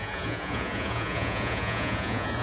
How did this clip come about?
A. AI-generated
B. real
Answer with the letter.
A